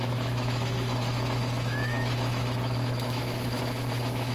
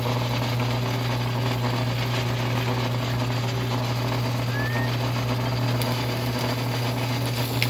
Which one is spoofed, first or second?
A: first